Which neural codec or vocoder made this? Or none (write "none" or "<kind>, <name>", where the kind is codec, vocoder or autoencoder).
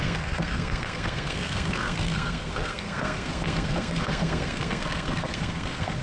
codec, SNAC